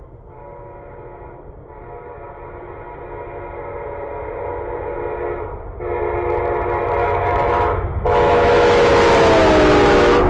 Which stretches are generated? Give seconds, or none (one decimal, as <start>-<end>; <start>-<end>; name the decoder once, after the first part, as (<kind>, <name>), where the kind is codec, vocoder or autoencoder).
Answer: 7.0-8.9 (autoencoder, DAC-VAE)